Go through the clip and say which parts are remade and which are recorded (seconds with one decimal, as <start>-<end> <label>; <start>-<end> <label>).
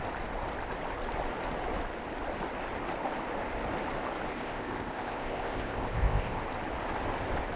0.0-4.3 recorded; 4.3-6.4 remade; 6.4-7.6 recorded